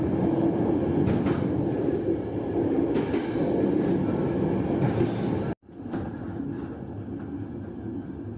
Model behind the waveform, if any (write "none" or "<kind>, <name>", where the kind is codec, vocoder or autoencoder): none